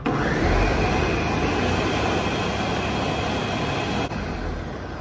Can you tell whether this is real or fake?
real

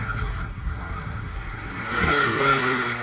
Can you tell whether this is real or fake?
fake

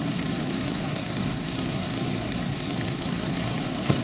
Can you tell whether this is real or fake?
fake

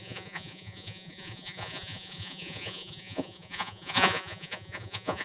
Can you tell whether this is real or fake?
fake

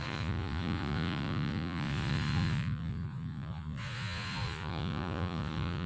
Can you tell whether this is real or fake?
fake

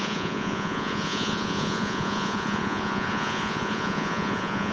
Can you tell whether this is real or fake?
fake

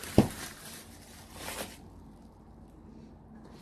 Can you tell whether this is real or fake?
real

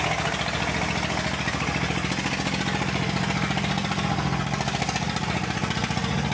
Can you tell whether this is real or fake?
real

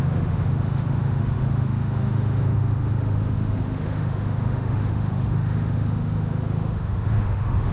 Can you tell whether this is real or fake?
fake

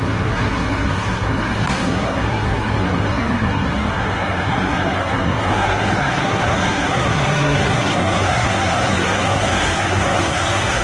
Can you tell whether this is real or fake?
fake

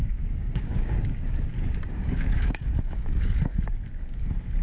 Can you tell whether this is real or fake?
fake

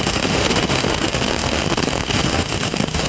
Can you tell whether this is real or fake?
fake